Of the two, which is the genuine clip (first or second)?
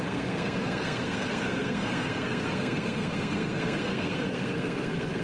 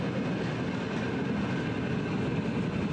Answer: second